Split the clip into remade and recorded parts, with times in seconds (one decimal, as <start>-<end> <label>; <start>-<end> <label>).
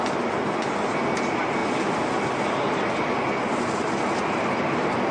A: 0.0-5.1 recorded